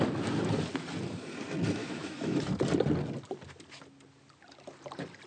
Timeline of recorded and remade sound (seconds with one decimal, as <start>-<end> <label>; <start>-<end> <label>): 0.0-1.8 recorded; 1.8-2.4 remade; 2.4-5.3 recorded